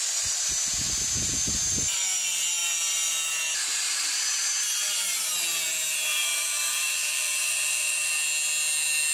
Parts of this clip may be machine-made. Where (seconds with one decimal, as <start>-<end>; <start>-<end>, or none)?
6.1-8.1